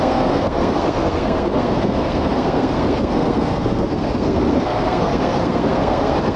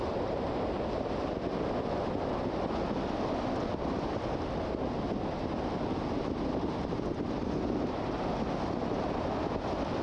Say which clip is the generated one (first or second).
first